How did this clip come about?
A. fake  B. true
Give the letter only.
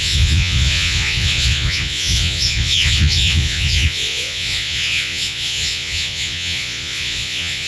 A